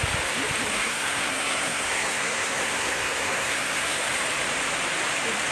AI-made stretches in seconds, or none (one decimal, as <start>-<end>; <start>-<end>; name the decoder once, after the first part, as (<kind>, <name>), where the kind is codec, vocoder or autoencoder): 0.7-4.0 (codec, SNAC)